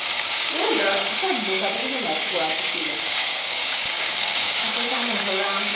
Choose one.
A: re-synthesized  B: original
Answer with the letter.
A